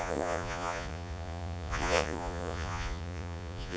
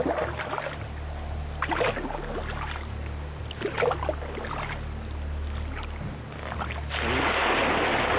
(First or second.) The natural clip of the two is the second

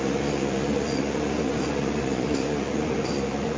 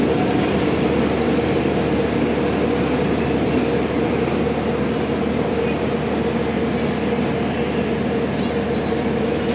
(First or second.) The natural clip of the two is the second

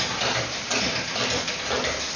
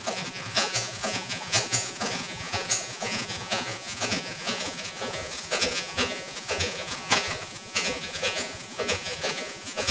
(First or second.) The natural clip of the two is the first